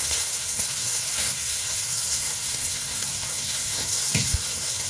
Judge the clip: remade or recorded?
remade